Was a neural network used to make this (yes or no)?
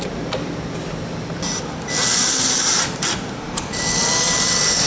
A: yes